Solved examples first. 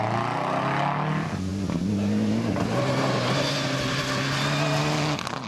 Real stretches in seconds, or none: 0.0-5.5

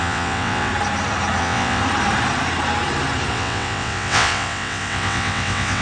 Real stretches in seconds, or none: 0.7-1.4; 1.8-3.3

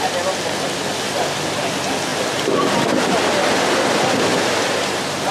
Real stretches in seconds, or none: 0.0-5.3

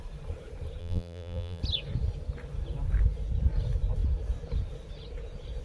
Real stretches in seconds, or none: 0.0-0.8; 1.6-5.6

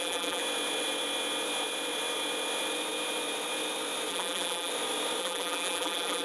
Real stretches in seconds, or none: 0.4-4.1; 4.7-5.2